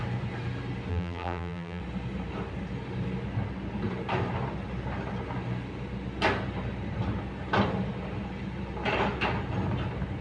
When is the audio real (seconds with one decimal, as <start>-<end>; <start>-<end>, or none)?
0.0-0.9; 1.8-10.2

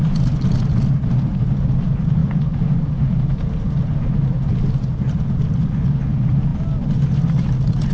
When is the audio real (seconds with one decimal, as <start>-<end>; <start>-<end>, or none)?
0.0-7.9

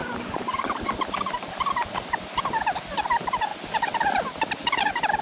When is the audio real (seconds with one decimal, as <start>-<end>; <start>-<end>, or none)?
0.0-5.2

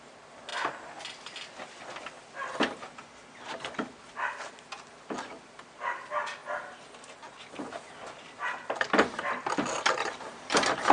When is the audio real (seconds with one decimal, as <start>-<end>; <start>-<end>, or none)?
0.0-3.0; 3.5-10.0

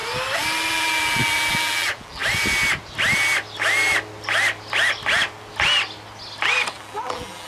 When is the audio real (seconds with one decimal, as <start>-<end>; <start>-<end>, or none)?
0.0-0.7; 2.2-6.7

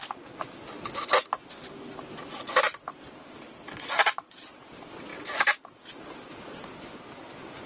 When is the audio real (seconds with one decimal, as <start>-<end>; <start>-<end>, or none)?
0.0-7.7

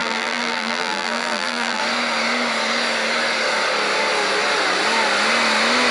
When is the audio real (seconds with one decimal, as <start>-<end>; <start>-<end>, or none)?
1.8-5.9

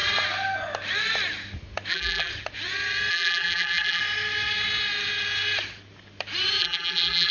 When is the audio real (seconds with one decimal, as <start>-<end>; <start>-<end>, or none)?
0.0-1.9; 2.3-3.1; 4.0-6.6